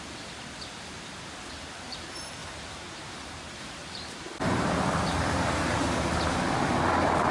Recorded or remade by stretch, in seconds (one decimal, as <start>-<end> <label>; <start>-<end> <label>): 0.0-2.4 recorded; 2.4-6.8 remade; 6.8-7.3 recorded